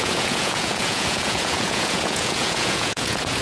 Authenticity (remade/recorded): remade